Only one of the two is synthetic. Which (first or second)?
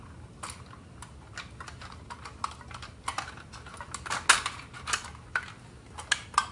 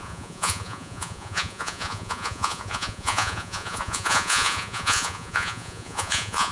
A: second